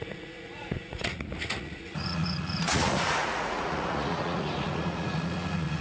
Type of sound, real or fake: fake